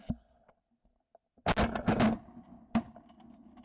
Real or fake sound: real